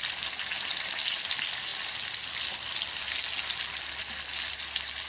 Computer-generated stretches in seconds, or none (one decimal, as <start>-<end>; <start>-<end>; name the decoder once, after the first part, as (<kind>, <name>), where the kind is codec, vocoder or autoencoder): none